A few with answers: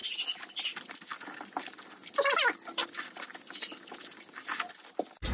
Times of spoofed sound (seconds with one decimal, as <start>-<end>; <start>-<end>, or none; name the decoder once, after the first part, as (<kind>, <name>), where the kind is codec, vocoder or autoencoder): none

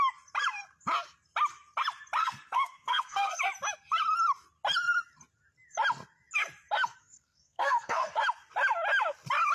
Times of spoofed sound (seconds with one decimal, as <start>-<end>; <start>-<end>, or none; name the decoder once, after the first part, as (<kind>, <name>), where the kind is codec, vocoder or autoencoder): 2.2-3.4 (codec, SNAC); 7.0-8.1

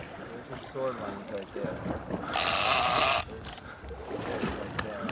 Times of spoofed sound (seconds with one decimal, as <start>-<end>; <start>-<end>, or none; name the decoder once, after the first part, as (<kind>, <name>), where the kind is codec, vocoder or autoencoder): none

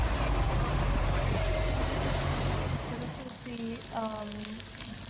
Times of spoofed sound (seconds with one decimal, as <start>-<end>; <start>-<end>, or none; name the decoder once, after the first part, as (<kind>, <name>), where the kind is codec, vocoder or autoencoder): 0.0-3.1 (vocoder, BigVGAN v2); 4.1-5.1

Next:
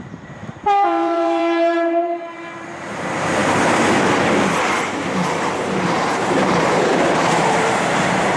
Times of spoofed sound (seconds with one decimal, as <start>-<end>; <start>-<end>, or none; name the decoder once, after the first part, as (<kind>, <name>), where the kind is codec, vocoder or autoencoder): 0.0-3.4 (vocoder, BigVGAN v2); 4.5-8.4

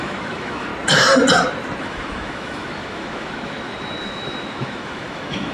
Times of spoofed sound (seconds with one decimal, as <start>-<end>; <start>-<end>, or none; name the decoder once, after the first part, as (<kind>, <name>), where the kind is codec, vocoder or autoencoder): 0.0-0.7 (autoencoder, DAC-VAE); 1.8-5.5

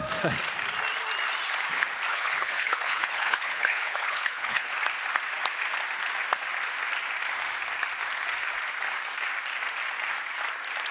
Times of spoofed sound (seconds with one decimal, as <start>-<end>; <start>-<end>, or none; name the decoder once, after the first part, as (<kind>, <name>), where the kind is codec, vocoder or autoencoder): 2.1-4.7 (codec, HILCodec)

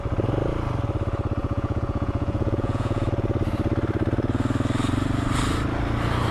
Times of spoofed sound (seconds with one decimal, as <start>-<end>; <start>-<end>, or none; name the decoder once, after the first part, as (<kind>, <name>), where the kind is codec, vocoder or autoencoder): 1.4-3.1 (vocoder, Vocos)